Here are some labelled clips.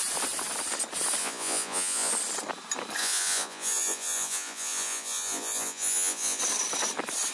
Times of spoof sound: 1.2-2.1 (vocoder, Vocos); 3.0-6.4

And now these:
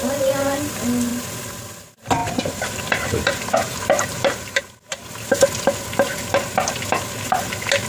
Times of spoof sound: 2.2-4.6 (vocoder, BigVGAN v2)

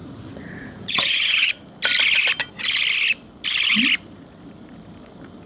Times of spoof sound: 0.0-1.5 (vocoder, Vocos)

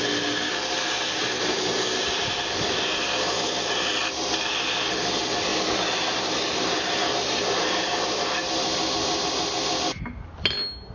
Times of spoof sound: none

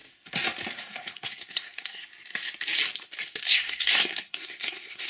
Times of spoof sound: 0.8-2.0 (codec, SNAC); 3.4-5.1

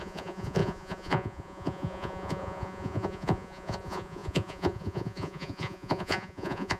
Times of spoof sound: 0.0-6.8 (vocoder, Vocos)